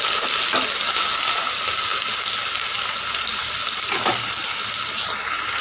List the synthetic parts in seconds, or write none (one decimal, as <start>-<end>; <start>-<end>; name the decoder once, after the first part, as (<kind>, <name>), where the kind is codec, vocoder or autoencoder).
none